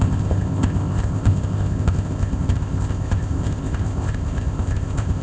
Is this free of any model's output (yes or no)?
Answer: no